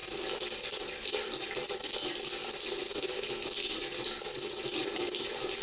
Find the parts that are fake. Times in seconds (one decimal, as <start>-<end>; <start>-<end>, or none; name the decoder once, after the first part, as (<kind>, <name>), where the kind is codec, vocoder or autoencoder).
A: 0.0-2.7 (vocoder, BigVGAN v2); 3.6-5.6